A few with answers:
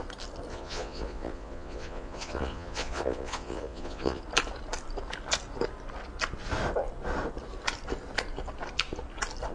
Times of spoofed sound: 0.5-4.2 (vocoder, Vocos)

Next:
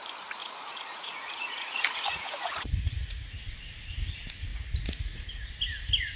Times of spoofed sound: 0.4-4.1 (vocoder, Vocos); 4.5-5.5